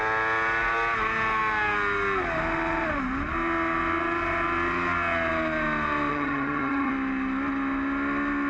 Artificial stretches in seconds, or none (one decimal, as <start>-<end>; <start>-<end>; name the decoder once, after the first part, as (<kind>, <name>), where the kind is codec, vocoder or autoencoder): 6.1-6.9 (vocoder, HiFi-GAN)